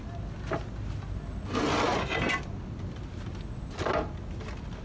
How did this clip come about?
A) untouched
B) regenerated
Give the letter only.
A